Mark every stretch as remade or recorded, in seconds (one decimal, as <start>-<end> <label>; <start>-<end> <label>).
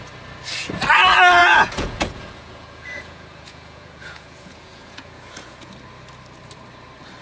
0.0-1.4 recorded; 1.4-5.7 remade; 5.7-7.2 recorded